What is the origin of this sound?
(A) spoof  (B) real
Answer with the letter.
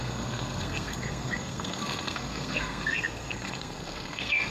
A